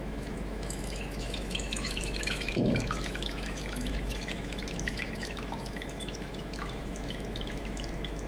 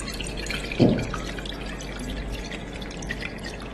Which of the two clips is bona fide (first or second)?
second